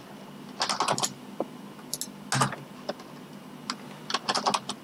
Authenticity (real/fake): real